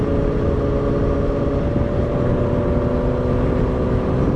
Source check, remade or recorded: recorded